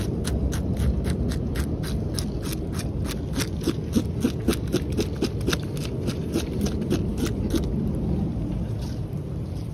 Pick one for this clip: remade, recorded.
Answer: recorded